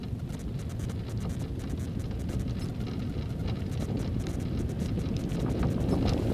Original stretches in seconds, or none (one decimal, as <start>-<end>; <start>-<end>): 0.0-6.3